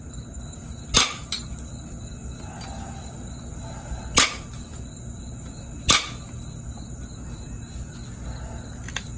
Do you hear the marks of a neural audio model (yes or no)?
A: no